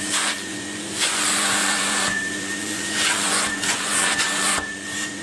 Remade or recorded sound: remade